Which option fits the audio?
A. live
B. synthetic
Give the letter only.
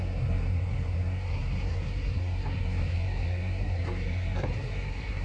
B